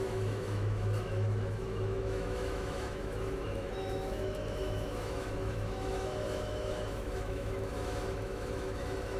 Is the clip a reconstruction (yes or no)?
yes